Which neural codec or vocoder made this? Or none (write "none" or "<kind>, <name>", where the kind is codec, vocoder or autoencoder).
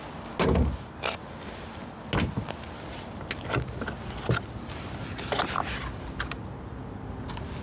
none